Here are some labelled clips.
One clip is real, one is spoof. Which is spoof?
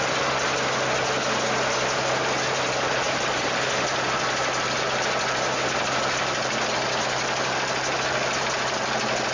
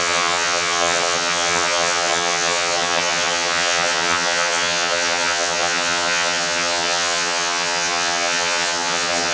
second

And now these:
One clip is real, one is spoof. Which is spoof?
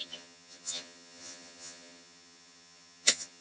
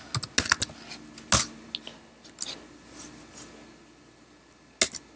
first